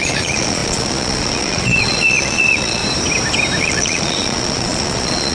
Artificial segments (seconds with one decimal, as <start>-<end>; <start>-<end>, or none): 0.0-2.8; 3.6-5.3